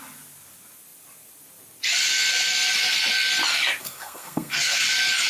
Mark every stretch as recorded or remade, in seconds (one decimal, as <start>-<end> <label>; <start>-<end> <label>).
0.0-3.8 recorded; 3.8-4.8 remade; 4.8-5.3 recorded